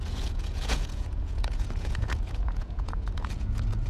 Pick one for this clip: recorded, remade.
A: remade